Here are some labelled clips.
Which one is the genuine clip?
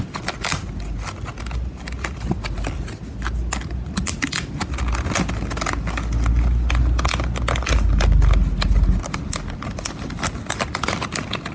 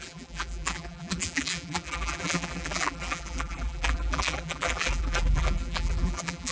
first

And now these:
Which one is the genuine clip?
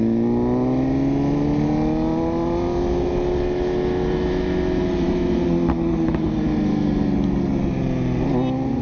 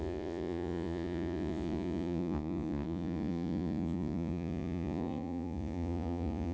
first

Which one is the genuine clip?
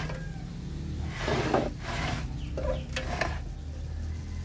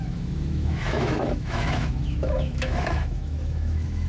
first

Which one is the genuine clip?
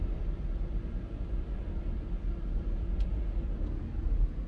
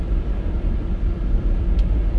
first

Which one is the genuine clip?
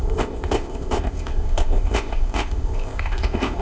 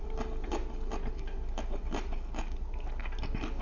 second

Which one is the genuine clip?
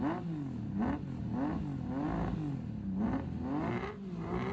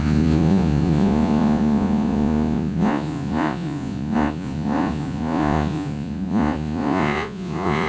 first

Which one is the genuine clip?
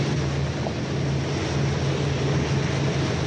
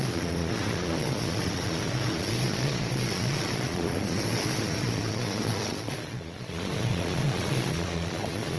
first